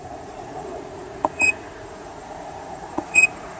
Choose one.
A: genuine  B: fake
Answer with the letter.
B